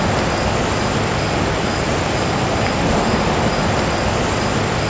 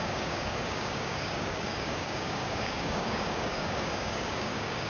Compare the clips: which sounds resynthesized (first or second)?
second